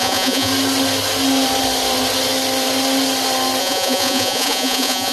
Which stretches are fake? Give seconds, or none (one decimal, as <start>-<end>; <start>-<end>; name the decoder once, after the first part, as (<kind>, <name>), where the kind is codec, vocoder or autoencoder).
0.0-0.5 (vocoder, Vocos); 3.6-5.1